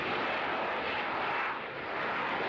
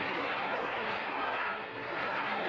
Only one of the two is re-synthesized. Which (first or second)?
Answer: second